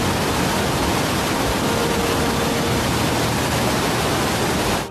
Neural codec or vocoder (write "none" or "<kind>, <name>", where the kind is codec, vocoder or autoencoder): none